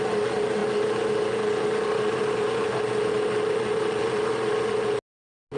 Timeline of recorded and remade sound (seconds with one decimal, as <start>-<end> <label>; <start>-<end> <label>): 0.0-5.6 recorded